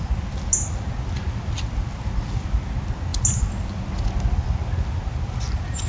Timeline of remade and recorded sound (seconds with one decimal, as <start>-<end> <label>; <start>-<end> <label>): 0.0-5.9 recorded